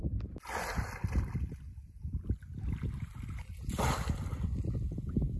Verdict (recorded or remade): recorded